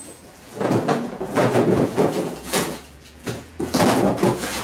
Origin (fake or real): fake